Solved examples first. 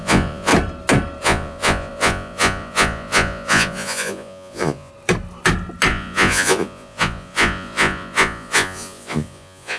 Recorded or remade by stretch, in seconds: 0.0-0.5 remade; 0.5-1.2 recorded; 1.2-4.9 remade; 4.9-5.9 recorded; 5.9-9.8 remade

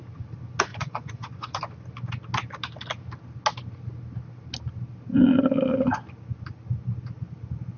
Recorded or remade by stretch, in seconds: 0.0-0.7 recorded; 0.7-1.6 remade; 1.6-7.8 recorded

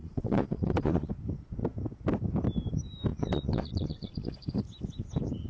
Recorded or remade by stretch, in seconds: 0.0-1.1 remade; 1.1-3.1 recorded; 3.1-4.5 remade; 4.5-5.5 recorded

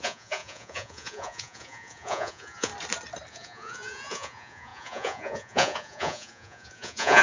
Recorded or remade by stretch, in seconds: 0.0-2.7 remade; 2.7-3.3 recorded; 3.3-7.2 remade